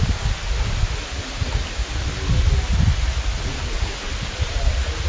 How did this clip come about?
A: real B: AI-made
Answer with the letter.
A